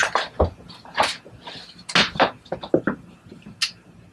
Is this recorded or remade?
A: recorded